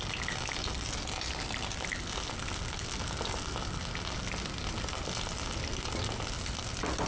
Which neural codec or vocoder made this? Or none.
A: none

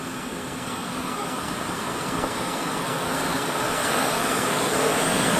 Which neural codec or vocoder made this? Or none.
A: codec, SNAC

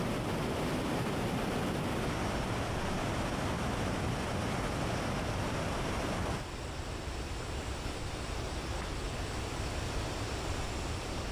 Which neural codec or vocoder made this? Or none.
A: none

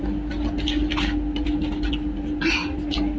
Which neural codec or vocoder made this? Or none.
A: none